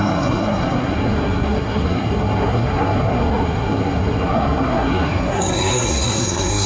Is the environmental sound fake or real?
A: fake